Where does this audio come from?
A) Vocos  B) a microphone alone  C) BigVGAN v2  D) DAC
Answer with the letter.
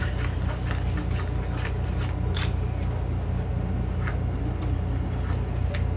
B